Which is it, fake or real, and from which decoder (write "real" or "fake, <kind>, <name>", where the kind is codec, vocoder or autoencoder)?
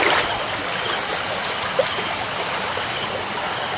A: real